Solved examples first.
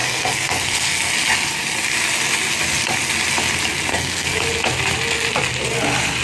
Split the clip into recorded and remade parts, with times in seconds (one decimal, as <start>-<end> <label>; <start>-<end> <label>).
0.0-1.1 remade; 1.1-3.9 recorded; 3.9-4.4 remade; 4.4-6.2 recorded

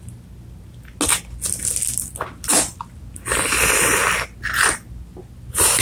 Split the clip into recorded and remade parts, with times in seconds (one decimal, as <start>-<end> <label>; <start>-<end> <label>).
0.0-5.8 recorded

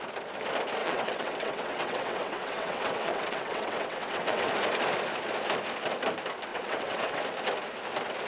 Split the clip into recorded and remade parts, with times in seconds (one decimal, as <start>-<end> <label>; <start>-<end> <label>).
0.0-0.8 recorded; 0.8-4.5 remade; 4.5-6.5 recorded; 6.5-7.2 remade; 7.2-8.3 recorded

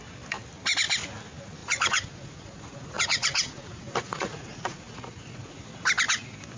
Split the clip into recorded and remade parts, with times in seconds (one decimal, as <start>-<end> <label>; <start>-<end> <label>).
0.0-1.6 recorded; 1.6-5.6 remade; 5.6-6.6 recorded